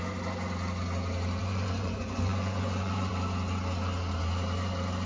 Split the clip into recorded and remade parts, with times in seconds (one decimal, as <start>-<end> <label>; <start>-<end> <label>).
0.0-1.4 recorded; 1.4-3.1 remade; 3.1-5.1 recorded